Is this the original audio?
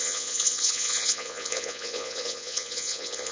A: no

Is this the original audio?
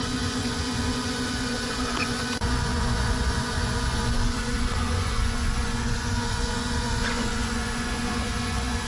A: no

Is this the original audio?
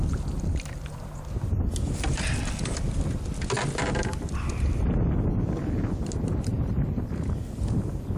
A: yes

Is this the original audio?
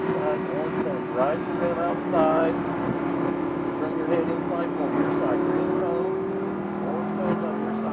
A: yes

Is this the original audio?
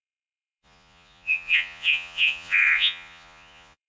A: no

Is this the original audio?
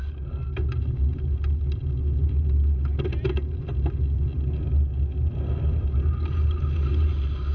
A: yes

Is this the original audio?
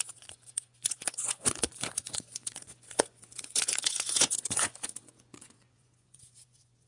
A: no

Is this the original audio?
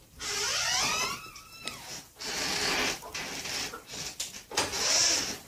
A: yes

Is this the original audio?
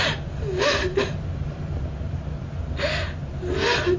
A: yes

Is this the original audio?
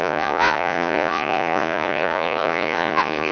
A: no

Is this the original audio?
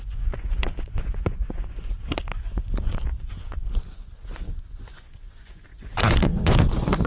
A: no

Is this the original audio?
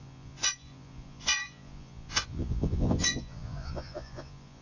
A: no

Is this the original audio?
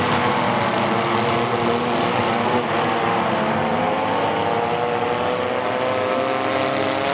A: yes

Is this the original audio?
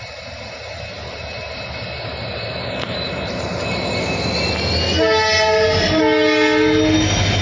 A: yes